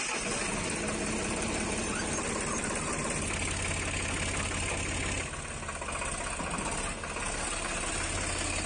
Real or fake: real